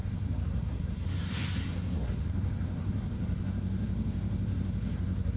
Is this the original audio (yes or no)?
no